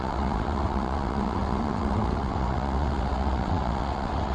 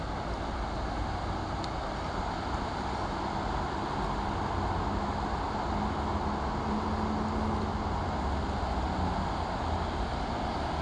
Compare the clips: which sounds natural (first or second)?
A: second